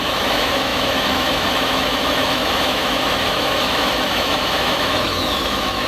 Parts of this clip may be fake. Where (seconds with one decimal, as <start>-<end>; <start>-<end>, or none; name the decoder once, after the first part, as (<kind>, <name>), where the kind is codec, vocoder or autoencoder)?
0.0-5.9 (autoencoder, DAC-VAE)